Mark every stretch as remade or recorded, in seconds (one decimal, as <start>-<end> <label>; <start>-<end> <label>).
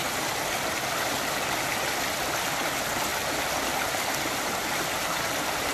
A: 0.0-5.7 recorded